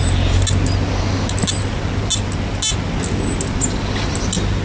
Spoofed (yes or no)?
no